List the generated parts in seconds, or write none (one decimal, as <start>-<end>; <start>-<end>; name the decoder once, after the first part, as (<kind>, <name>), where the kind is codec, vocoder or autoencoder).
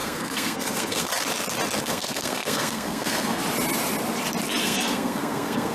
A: 0.0-1.1 (codec, SNAC); 1.8-3.4; 4.6-5.7